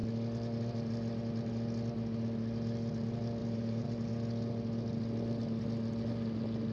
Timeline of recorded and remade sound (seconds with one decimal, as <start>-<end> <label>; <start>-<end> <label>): 0.0-3.4 recorded; 3.4-4.1 remade; 4.1-6.7 recorded